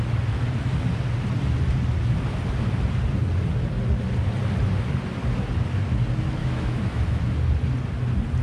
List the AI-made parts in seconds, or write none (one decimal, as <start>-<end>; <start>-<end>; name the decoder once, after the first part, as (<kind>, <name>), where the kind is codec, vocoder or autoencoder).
6.4-7.2 (autoencoder, DAC-VAE)